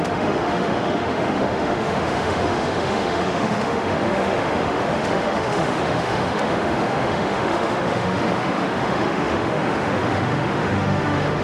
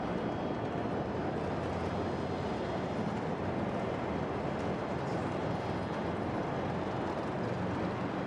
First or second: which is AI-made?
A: first